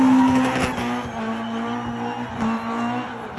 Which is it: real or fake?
real